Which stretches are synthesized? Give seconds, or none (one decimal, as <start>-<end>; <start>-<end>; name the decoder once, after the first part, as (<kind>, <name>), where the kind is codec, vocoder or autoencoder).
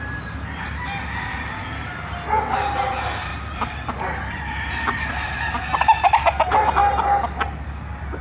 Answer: none